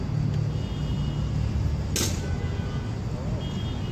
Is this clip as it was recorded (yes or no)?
yes